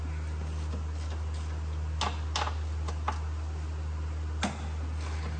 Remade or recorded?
recorded